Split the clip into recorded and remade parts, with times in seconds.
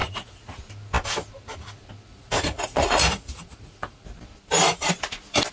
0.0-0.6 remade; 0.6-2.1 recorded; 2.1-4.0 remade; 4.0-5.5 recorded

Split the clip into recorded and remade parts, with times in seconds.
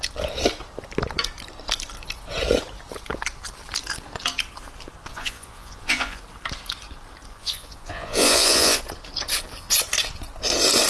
0.0-5.1 recorded; 5.1-6.2 remade; 6.2-7.3 recorded; 7.3-8.8 remade; 8.8-10.9 recorded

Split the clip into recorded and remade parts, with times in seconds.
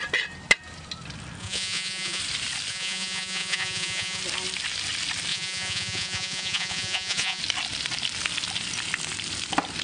0.0-1.4 recorded; 1.4-2.2 remade; 2.2-2.7 recorded; 2.7-4.2 remade; 4.2-5.3 recorded; 5.3-7.4 remade; 7.4-9.8 recorded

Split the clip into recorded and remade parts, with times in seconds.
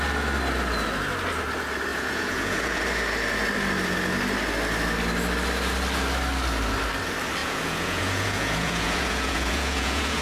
0.0-1.9 recorded; 1.9-2.8 remade; 2.8-7.4 recorded; 7.4-10.2 remade